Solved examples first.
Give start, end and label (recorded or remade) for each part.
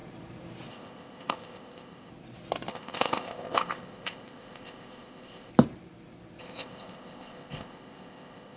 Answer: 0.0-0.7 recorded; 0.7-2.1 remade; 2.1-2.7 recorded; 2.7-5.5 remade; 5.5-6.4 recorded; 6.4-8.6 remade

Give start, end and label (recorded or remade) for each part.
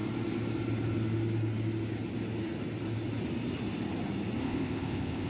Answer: 0.0-4.4 recorded; 4.4-5.3 remade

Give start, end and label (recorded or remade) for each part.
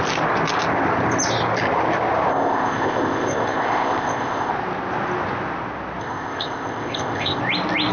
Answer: 0.0-2.3 recorded; 2.3-4.5 remade; 4.5-6.0 recorded; 6.0-7.4 remade; 7.4-7.9 recorded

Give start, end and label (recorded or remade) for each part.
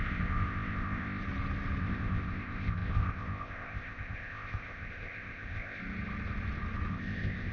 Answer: 0.0-1.2 remade; 1.2-1.8 recorded; 1.8-5.8 remade; 5.8-6.9 recorded; 6.9-7.5 remade